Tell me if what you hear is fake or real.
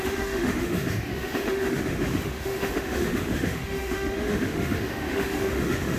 fake